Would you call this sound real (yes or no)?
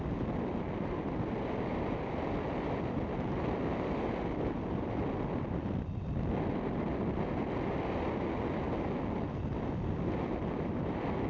yes